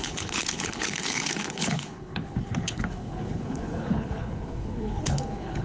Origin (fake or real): fake